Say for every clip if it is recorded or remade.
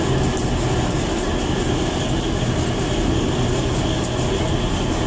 recorded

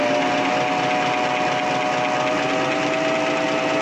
recorded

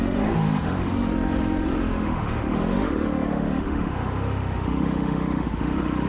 remade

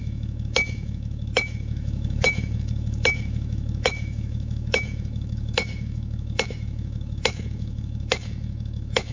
remade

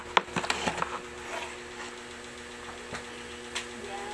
recorded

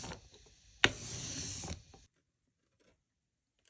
recorded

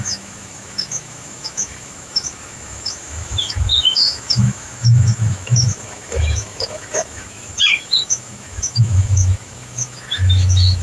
remade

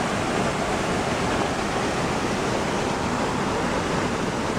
recorded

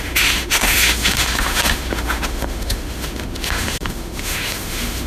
remade